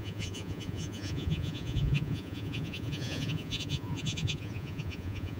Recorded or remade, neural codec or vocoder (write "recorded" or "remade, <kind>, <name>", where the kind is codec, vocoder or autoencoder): remade, vocoder, Vocos